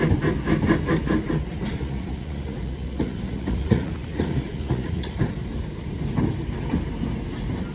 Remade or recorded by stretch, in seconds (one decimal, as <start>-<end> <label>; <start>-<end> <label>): 0.0-1.7 recorded; 1.7-5.1 remade; 5.1-7.7 recorded